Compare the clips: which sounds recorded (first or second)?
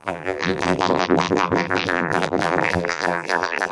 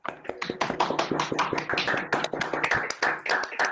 second